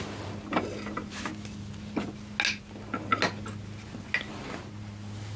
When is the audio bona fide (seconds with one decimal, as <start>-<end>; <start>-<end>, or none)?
0.0-5.4